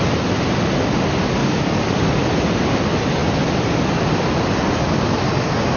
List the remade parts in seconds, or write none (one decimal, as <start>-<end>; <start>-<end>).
1.4-2.2